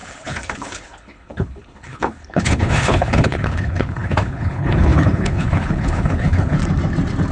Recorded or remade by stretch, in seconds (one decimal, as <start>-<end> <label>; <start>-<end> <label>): 0.0-6.6 remade; 6.6-7.3 recorded

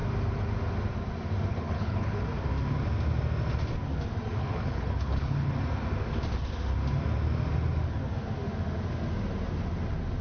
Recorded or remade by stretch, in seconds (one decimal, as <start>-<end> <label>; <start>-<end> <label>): 0.0-1.5 recorded; 1.5-2.2 remade; 2.2-4.4 recorded; 4.4-5.5 remade; 5.5-10.2 recorded

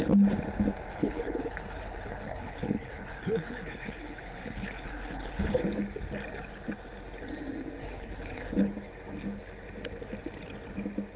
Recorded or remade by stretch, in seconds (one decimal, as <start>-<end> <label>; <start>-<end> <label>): 0.0-0.9 recorded; 0.9-5.6 remade; 5.6-7.8 recorded; 7.8-8.6 remade; 8.6-11.2 recorded

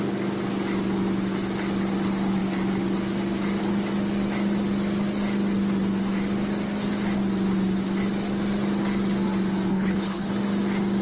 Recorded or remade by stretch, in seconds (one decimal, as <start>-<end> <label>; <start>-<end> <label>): 0.0-9.7 recorded; 9.7-10.3 remade; 10.3-11.0 recorded

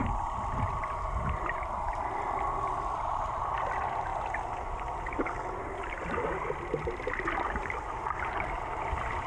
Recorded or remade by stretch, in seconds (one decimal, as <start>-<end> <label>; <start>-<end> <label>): 0.0-9.3 recorded

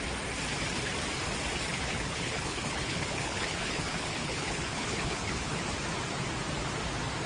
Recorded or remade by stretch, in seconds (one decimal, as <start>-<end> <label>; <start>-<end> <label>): 0.0-1.7 recorded; 1.7-5.6 remade; 5.6-7.3 recorded

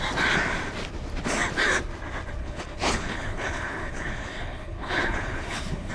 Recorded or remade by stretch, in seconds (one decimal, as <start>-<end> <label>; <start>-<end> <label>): 0.0-2.4 recorded; 2.4-5.9 remade

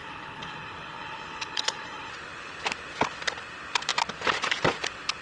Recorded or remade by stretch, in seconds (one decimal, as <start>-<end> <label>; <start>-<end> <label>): 0.0-2.1 remade; 2.1-5.2 recorded